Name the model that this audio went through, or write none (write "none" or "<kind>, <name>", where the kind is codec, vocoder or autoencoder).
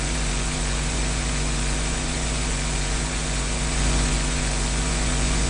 vocoder, Vocos